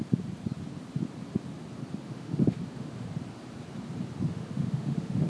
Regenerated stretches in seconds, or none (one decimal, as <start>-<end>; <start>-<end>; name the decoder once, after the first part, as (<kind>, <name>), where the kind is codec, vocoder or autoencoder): 2.0-3.1 (autoencoder, DAC-VAE); 4.2-5.3